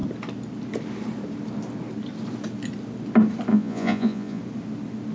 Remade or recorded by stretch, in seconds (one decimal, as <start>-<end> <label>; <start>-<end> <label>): 0.0-3.5 recorded; 3.5-4.4 remade; 4.4-5.1 recorded